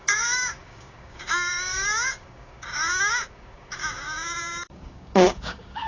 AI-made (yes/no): yes